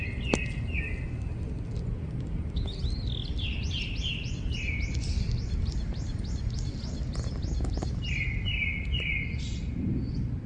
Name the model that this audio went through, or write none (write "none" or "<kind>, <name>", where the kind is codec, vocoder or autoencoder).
none